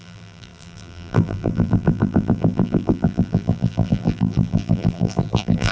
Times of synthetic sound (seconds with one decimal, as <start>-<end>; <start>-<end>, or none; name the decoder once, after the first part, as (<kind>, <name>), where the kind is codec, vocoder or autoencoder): 0.0-5.7 (vocoder, BigVGAN v2)

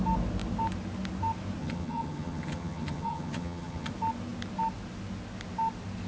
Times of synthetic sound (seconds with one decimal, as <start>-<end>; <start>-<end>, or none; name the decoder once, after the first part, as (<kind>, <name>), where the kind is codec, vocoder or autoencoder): 1.6-3.9 (vocoder, HiFi-GAN)

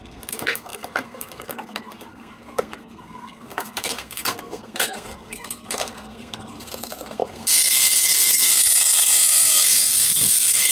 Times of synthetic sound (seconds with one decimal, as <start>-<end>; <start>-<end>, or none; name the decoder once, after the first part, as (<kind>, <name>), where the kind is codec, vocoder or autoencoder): 0.0-10.7 (codec, SNAC)